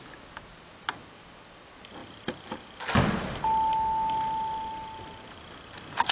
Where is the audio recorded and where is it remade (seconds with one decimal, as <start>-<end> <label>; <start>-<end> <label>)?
0.0-6.1 recorded